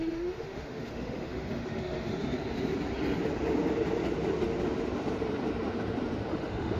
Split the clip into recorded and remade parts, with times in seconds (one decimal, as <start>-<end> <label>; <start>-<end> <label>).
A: 0.0-2.2 remade; 2.2-6.3 recorded; 6.3-6.8 remade